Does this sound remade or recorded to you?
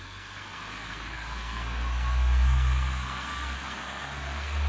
remade